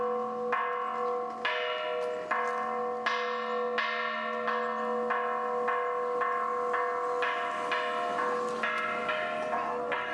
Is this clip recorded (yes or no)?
yes